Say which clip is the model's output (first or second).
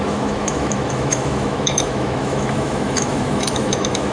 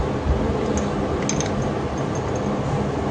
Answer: first